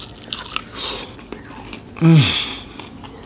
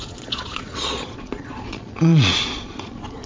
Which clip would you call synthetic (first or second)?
second